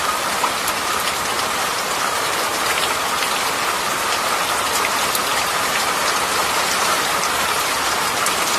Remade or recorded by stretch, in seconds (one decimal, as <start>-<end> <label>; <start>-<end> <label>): 0.0-1.7 recorded; 1.7-2.3 remade; 2.3-5.3 recorded; 5.3-8.1 remade; 8.1-8.6 recorded